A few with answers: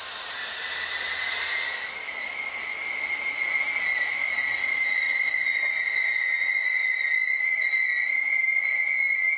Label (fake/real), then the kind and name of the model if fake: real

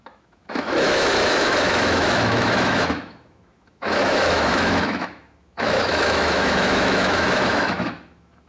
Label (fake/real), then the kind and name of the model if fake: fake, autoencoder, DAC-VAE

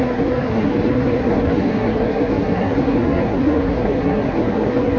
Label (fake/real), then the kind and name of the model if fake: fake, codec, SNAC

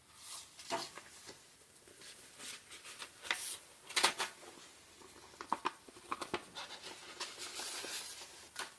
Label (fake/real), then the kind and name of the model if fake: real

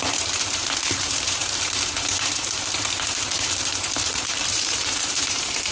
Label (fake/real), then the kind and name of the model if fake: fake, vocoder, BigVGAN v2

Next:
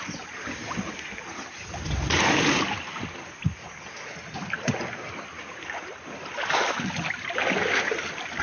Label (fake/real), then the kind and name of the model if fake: real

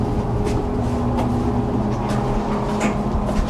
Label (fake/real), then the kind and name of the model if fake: real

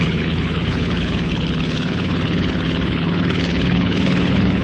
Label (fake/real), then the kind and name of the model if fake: fake, codec, HILCodec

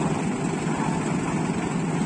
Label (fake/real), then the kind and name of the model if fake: real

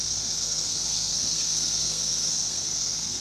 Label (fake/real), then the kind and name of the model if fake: fake, codec, SNAC